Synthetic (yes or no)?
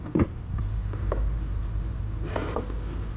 no